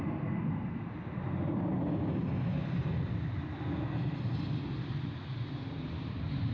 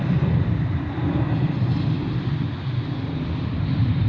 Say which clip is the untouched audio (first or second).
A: first